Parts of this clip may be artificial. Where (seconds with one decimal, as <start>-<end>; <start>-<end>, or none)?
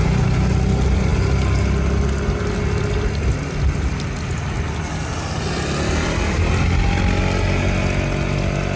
none